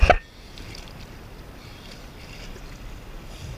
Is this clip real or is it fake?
real